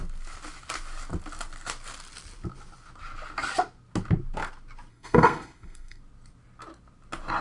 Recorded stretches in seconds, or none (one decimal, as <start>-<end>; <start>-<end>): 0.0-4.9; 6.0-7.4